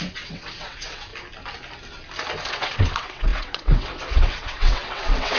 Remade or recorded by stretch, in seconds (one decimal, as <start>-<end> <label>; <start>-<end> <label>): 0.0-1.1 remade; 1.1-2.5 recorded; 2.5-5.4 remade